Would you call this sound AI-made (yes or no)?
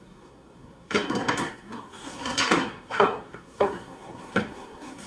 yes